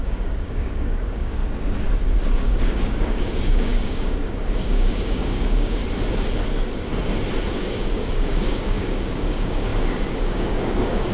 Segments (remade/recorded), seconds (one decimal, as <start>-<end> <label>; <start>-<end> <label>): 0.0-1.4 remade; 1.4-2.3 recorded; 2.3-5.8 remade; 5.8-7.5 recorded; 7.5-11.1 remade